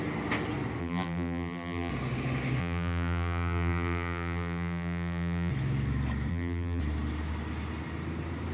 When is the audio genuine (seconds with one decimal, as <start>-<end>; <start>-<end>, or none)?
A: 0.0-0.8; 1.9-2.6; 5.5-6.3; 6.8-8.5